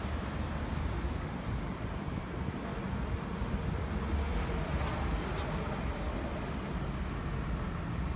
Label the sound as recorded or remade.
recorded